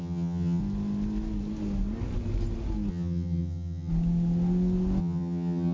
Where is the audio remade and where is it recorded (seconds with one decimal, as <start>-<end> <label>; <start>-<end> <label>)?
0.0-0.6 remade; 0.6-2.9 recorded; 2.9-3.9 remade; 3.9-5.0 recorded; 5.0-5.7 remade